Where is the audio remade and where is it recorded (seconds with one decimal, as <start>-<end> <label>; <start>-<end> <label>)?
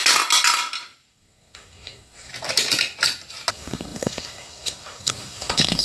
0.0-1.1 recorded; 1.1-2.3 remade; 2.3-3.5 recorded; 3.5-5.8 remade